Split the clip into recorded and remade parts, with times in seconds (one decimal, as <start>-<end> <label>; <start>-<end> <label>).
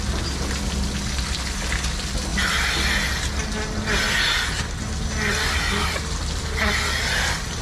0.0-7.6 recorded